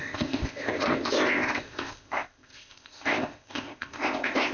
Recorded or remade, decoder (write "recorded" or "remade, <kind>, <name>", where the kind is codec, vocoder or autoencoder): remade, codec, ZipCodec